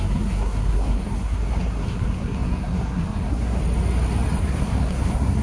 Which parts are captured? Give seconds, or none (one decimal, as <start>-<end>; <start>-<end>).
3.6-4.4